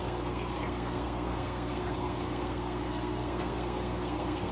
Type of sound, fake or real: fake